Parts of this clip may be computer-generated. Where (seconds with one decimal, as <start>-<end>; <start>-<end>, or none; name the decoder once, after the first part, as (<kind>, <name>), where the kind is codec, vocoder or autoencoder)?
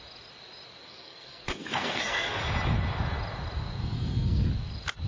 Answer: 0.8-2.4 (codec, SNAC); 3.8-4.5